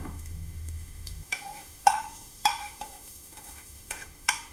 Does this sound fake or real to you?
fake